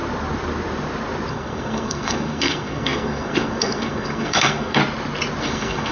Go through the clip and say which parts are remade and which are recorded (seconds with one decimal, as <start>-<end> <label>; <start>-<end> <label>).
0.0-1.3 recorded; 1.3-4.8 remade; 4.8-5.4 recorded; 5.4-5.9 remade